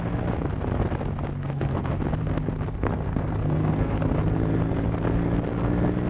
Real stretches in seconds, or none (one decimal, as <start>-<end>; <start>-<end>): 0.0-1.4; 1.9-2.7; 4.0-6.1